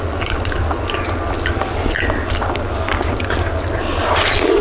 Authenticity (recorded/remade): recorded